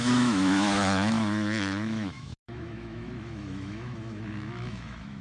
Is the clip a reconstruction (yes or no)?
yes